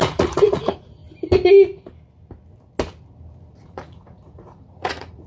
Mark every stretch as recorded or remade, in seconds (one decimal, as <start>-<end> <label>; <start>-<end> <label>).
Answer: 0.0-1.0 remade; 1.0-3.5 recorded; 3.5-5.3 remade